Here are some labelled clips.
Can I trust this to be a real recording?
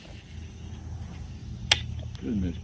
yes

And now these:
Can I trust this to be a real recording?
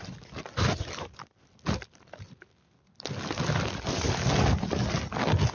yes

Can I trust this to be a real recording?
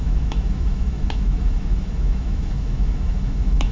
no